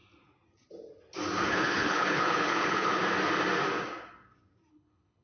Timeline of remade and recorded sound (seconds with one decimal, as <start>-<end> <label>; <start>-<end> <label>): 0.0-1.5 recorded; 1.5-3.0 remade; 3.0-4.7 recorded; 4.7-5.2 remade

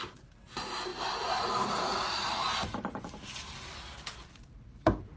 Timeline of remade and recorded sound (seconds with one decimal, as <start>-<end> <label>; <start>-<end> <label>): 0.0-0.9 recorded; 0.9-1.4 remade; 1.4-1.9 recorded; 1.9-5.2 remade

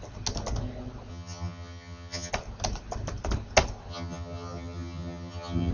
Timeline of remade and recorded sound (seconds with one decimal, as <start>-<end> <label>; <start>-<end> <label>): 0.0-1.1 recorded; 1.1-2.3 remade; 2.3-3.9 recorded; 3.9-5.7 remade

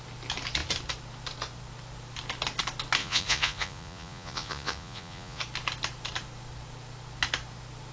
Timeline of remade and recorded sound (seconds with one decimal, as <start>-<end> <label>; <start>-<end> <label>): 0.0-3.0 recorded; 3.0-5.4 remade; 5.4-7.9 recorded